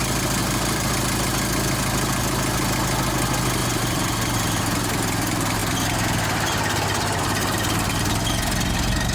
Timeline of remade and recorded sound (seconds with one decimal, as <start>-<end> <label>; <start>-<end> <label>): 0.0-0.4 recorded; 0.4-0.9 remade; 0.9-3.6 recorded; 3.6-4.6 remade; 4.6-9.1 recorded